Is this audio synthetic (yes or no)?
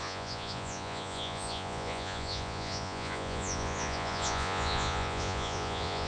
yes